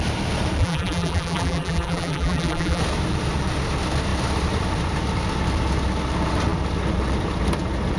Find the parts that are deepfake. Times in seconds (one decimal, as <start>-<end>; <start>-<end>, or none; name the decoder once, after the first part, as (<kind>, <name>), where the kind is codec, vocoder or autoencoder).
0.6-2.8 (vocoder, BigVGAN v2)

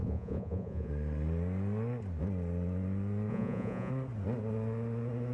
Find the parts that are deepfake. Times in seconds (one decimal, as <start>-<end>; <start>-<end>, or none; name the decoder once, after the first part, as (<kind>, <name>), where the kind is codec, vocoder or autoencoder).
0.0-0.9 (vocoder, Vocos); 3.3-3.9

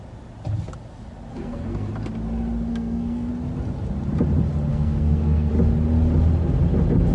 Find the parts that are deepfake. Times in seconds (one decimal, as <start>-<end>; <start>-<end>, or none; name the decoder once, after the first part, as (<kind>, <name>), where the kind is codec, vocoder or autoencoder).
1.3-1.9 (codec, SNAC); 2.7-3.3; 4.7-5.5